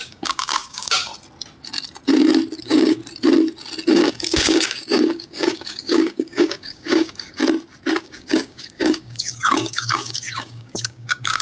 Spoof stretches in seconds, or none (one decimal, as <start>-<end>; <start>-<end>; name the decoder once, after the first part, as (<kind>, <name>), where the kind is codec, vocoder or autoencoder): 0.0-1.1 (codec, DAC); 2.6-3.0; 3.9-7.4; 8.0-11.4

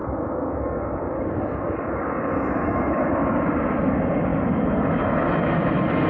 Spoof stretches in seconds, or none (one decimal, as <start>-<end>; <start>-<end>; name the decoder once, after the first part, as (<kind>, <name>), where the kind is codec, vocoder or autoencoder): 0.0-3.4 (codec, DAC)

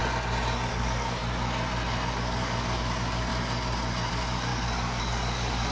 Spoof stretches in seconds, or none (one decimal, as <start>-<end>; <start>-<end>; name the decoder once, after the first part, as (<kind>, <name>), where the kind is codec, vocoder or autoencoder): 0.7-1.2 (codec, DAC); 2.1-3.3; 4.1-5.7